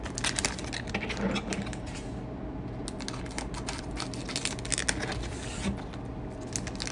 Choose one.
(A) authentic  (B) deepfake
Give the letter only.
A